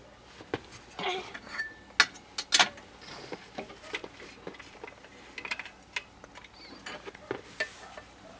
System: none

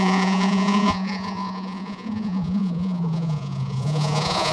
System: vocoder, Vocos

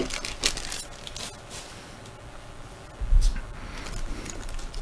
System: none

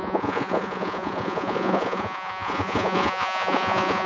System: vocoder, Vocos